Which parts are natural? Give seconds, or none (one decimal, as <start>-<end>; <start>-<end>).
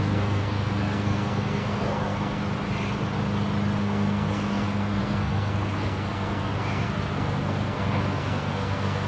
2.4-3.8